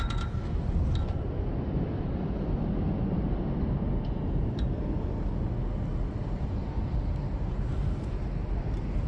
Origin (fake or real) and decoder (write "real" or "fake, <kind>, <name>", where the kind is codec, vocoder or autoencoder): real